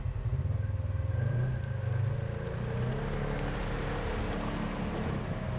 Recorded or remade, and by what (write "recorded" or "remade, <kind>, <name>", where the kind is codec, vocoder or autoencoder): recorded